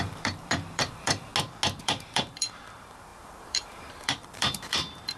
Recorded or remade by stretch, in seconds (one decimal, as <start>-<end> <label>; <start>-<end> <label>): 0.0-1.3 remade; 1.3-1.8 recorded; 1.8-5.2 remade